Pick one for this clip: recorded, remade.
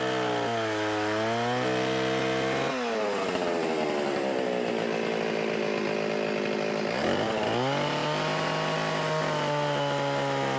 recorded